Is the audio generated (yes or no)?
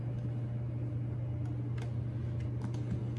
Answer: no